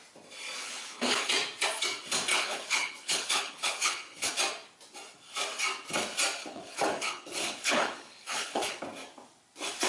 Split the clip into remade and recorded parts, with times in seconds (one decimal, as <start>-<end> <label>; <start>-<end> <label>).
0.0-0.6 recorded; 0.6-1.3 remade; 1.3-2.3 recorded; 2.3-4.3 remade; 4.3-6.4 recorded; 6.4-8.8 remade; 8.8-9.9 recorded